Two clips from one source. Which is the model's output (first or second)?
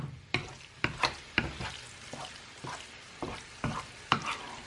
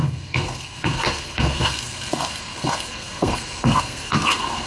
second